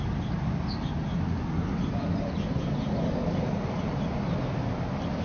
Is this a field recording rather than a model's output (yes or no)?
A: yes